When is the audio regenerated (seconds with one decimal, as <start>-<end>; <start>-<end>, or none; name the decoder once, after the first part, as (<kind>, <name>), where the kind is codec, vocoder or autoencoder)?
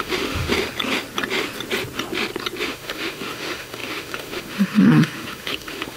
0.0-0.5 (autoencoder, DAC-VAE); 2.6-6.0